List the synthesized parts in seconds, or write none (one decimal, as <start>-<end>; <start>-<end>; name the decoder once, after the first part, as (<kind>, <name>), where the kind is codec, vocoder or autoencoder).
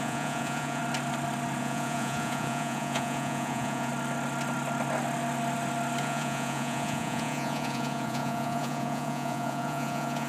0.0-0.8 (vocoder, Vocos); 1.6-3.9; 6.0-10.3